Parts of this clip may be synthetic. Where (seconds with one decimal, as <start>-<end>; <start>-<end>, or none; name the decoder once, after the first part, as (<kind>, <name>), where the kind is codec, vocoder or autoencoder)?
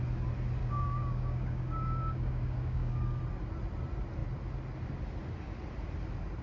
0.6-3.2 (codec, DAC)